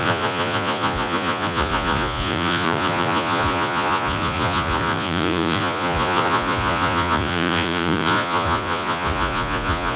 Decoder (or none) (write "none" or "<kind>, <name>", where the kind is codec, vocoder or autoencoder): vocoder, Vocos